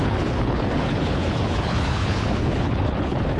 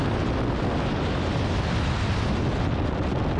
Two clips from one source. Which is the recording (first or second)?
second